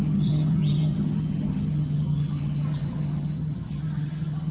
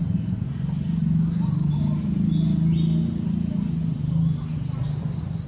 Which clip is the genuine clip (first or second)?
second